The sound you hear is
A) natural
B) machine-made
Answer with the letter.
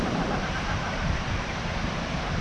B